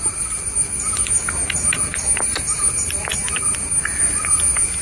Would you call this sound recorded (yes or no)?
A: yes